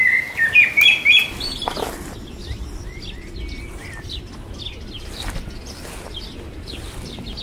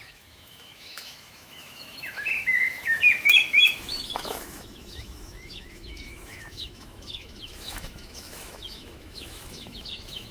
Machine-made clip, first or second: second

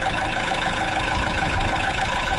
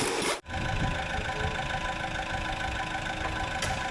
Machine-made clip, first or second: first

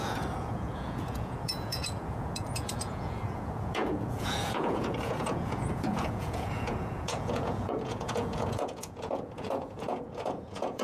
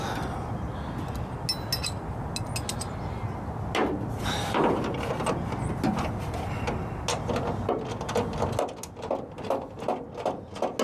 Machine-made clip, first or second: first